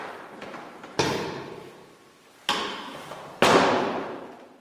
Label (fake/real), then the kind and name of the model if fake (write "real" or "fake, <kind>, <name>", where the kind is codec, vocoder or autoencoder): fake, vocoder, BigVGAN v2